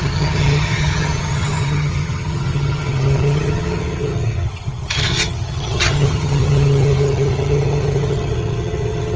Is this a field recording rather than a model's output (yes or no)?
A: no